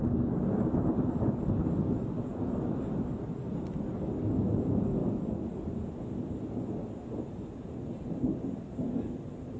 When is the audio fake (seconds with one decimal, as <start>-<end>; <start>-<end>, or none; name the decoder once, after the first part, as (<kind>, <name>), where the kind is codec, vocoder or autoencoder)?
none